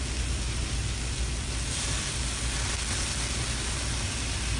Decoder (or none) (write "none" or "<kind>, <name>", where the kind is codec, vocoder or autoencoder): none